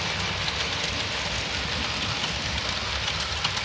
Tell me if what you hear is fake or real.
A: real